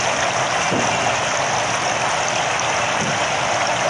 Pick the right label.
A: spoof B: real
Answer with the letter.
B